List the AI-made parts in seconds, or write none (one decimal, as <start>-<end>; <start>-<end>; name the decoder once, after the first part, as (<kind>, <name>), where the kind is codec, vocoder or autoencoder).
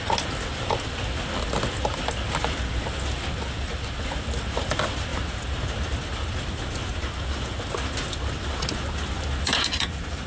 none